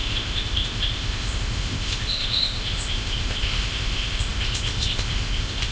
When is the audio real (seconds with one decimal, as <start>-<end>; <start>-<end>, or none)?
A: none